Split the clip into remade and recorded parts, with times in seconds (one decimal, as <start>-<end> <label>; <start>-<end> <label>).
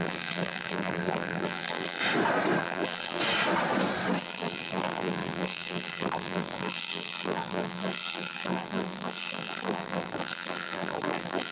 0.0-2.0 remade; 2.0-2.6 recorded; 2.6-3.2 remade; 3.2-4.2 recorded; 4.2-11.5 remade